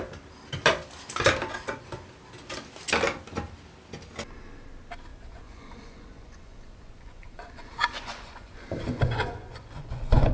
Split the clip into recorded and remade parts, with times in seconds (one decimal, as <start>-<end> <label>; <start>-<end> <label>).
0.0-5.1 recorded; 5.1-10.3 remade